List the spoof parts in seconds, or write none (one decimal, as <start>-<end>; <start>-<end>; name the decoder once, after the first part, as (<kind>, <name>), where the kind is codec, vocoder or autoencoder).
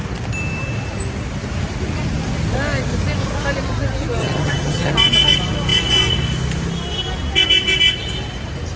4.2-4.9 (vocoder, HiFi-GAN)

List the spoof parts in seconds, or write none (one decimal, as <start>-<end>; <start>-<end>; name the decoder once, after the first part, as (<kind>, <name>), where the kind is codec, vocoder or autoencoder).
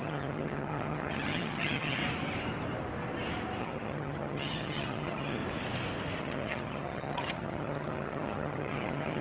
0.0-2.0 (vocoder, HiFi-GAN); 3.6-5.4; 6.2-9.2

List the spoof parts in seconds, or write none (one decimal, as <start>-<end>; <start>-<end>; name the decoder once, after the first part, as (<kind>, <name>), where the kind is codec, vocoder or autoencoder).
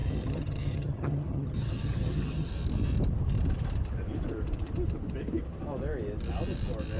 0.0-2.5 (vocoder, HiFi-GAN)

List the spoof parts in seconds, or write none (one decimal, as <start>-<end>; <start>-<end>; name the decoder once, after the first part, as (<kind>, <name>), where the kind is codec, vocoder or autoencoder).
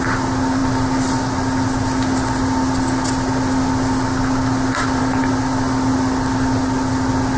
none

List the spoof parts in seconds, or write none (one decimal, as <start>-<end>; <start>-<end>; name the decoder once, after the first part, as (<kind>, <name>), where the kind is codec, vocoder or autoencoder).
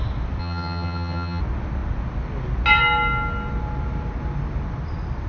0.4-1.4 (vocoder, HiFi-GAN)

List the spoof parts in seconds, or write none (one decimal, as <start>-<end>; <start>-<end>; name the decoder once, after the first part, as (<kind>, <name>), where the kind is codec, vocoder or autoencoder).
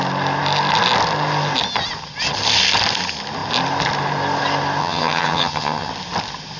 4.8-5.9 (vocoder, HiFi-GAN)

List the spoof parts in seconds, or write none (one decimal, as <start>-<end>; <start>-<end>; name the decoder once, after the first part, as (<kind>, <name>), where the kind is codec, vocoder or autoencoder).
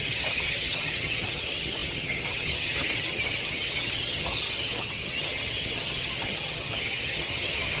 0.0-7.8 (vocoder, HiFi-GAN)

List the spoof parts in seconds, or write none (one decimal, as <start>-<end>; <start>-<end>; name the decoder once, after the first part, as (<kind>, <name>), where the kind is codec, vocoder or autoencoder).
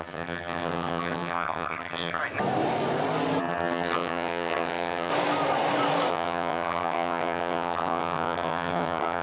0.0-2.2 (vocoder, HiFi-GAN); 3.4-5.1; 6.1-9.2